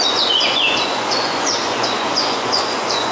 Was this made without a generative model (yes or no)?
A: no